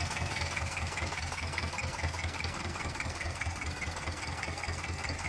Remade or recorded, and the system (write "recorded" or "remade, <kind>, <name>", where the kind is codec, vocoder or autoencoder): remade, codec, SNAC